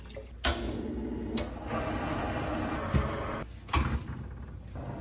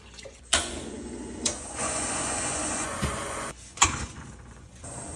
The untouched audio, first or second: first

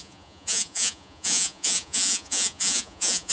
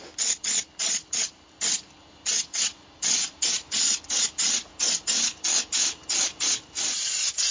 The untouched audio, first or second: second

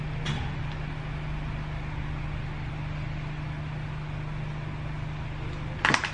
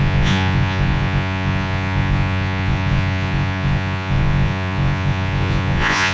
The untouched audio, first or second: first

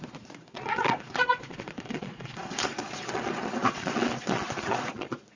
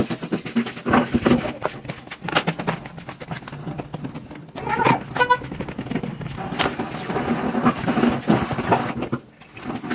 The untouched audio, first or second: second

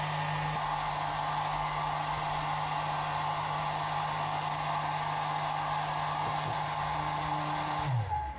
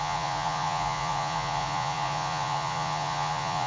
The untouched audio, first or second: first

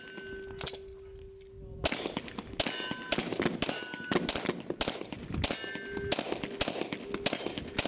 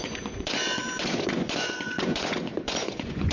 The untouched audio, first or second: first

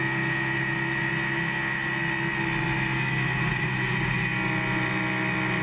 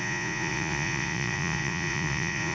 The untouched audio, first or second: first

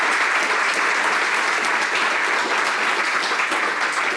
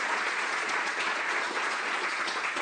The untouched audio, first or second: first